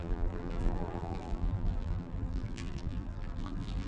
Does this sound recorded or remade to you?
remade